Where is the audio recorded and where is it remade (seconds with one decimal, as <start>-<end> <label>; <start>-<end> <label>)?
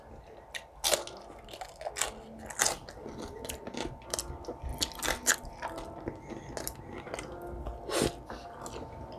0.0-9.2 recorded